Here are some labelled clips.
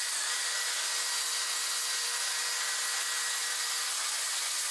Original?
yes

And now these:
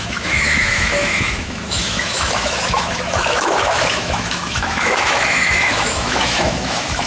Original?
no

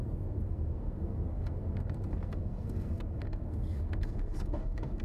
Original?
no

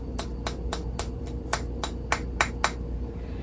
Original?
yes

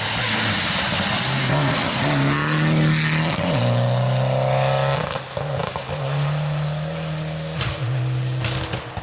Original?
yes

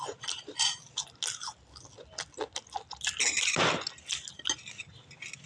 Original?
yes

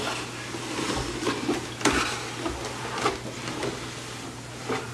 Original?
yes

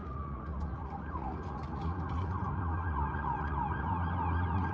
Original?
no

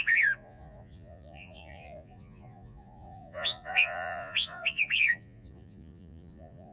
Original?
no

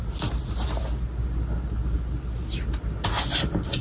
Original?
yes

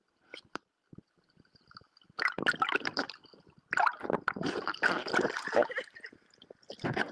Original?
yes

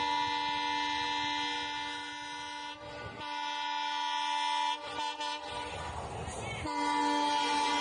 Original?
yes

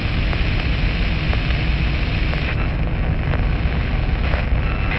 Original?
yes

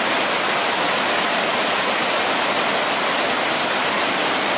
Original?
yes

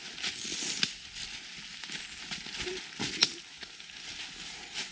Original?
yes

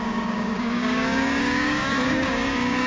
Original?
no